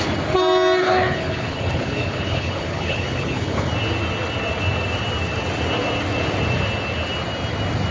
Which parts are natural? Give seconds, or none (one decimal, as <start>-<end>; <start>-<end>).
0.0-0.8; 3.7-7.9